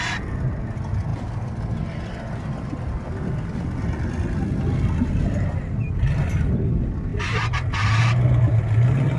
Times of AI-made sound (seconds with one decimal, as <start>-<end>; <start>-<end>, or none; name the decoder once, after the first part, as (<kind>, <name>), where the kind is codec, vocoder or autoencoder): none